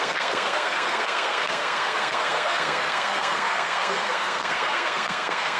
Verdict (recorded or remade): remade